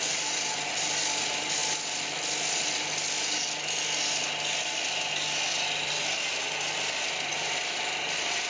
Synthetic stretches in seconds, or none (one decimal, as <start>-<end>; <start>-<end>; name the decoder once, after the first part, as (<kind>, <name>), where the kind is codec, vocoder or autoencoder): none